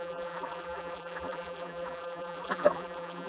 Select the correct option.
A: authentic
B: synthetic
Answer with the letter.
B